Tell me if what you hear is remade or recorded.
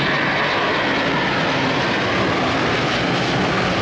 recorded